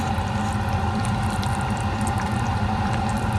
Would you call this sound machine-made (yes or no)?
yes